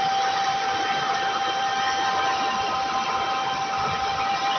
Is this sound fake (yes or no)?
no